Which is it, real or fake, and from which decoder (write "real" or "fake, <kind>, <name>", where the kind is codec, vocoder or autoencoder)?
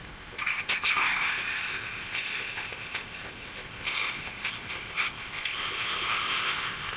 fake, codec, ZipCodec